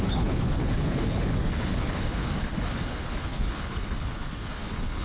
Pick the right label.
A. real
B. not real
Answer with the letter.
B